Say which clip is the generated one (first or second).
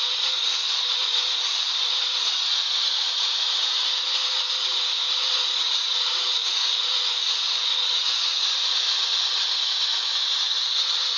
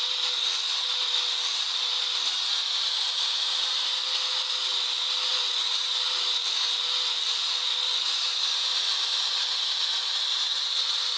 first